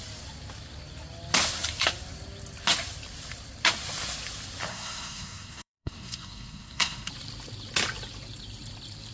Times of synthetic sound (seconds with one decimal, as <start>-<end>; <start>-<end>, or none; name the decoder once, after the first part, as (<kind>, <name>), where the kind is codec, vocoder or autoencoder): 4.7-7.1 (codec, SNAC)